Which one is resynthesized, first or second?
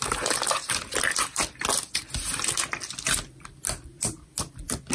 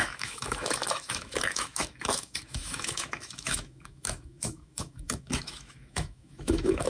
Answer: second